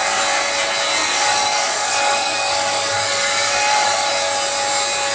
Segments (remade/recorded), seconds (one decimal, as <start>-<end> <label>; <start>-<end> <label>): 0.0-1.0 recorded; 1.0-4.1 remade; 4.1-5.1 recorded